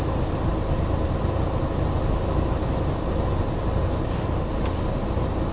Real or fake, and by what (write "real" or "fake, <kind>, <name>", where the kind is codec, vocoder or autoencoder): real